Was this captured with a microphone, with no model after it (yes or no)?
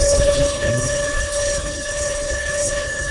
no